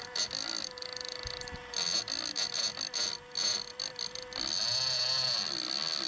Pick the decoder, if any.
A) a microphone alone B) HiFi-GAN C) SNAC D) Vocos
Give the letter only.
A